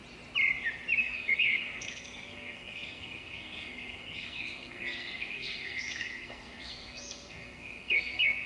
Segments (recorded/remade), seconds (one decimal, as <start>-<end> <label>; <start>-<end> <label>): 0.0-1.0 recorded; 1.0-8.5 remade